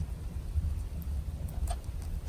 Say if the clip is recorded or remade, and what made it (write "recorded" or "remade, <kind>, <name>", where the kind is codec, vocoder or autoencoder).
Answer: recorded